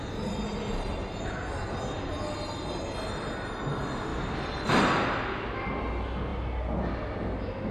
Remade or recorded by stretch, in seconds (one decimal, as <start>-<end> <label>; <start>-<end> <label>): 0.0-4.1 recorded; 4.1-4.8 remade; 4.8-7.7 recorded

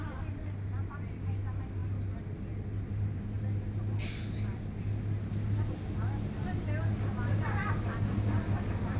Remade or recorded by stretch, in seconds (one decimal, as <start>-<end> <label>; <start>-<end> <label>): 0.0-9.0 recorded

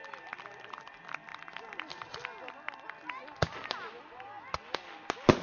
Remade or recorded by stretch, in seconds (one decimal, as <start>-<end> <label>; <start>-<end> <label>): 0.0-5.4 recorded

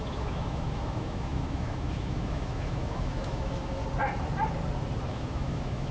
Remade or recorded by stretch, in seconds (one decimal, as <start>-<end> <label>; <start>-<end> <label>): 0.0-3.8 remade; 3.8-5.1 recorded; 5.1-5.9 remade

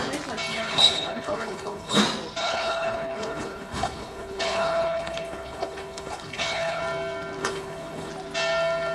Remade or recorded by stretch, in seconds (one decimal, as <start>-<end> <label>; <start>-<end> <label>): 0.0-0.5 recorded; 0.5-2.0 remade; 2.0-2.4 recorded; 2.4-6.8 remade; 6.8-7.4 recorded; 7.4-8.1 remade; 8.1-8.9 recorded

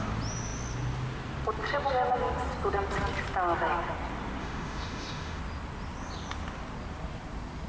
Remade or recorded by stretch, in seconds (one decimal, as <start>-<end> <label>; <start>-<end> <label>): 0.0-4.4 recorded; 4.4-5.4 remade; 5.4-7.7 recorded